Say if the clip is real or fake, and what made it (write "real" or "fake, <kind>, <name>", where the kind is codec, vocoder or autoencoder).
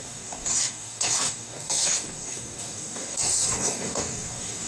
fake, codec, DAC